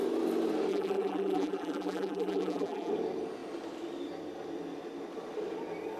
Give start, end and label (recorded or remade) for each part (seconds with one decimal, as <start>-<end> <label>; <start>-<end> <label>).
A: 0.0-0.7 recorded; 0.7-2.9 remade; 2.9-6.0 recorded